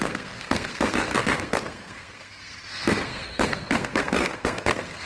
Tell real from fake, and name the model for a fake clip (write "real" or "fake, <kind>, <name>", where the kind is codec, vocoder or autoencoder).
fake, codec, SNAC